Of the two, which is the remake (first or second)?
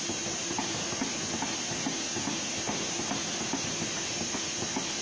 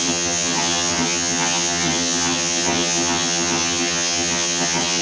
second